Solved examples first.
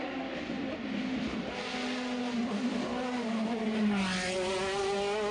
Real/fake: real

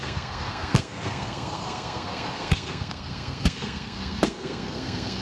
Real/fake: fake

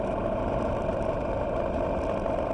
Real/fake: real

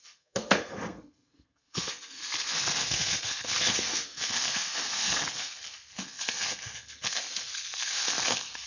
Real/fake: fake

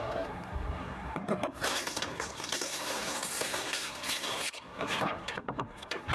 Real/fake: fake